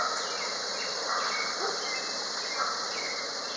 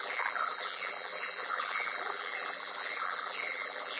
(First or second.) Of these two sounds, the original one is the first